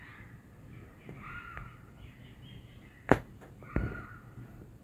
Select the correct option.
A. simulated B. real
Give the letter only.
A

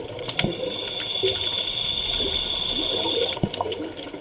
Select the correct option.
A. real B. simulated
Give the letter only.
A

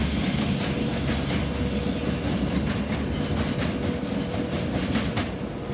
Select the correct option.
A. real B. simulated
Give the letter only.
A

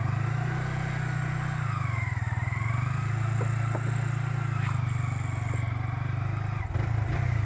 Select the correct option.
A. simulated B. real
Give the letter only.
B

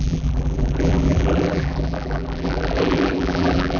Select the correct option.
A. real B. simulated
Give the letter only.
B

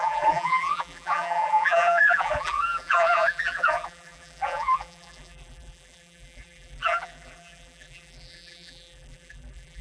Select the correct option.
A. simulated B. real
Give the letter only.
A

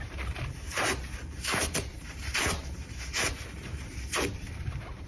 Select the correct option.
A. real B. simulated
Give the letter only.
B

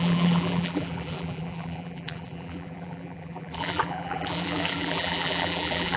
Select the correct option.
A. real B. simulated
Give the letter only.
B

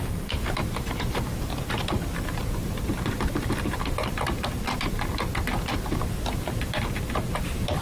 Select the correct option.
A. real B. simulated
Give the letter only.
B